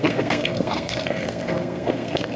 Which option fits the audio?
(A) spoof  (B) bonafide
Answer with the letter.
A